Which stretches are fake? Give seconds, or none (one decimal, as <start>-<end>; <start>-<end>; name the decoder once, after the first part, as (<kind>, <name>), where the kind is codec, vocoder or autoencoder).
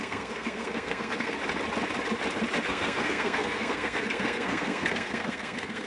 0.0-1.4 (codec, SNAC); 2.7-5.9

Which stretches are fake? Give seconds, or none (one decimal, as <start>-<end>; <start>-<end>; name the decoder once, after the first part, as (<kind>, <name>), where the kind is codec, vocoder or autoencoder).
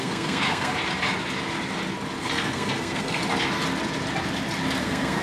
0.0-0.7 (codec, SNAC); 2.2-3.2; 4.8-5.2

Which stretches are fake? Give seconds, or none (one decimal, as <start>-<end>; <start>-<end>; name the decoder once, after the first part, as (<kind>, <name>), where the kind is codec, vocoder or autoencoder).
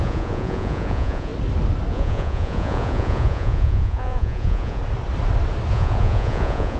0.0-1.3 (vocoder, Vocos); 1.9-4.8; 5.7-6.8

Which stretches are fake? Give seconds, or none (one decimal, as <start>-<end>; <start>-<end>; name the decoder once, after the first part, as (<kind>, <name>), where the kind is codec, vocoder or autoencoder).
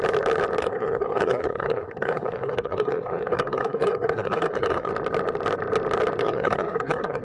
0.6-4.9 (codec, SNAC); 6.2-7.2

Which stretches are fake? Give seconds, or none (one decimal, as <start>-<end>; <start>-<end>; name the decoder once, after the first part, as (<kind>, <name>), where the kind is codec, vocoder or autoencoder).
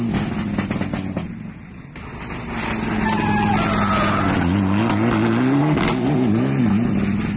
none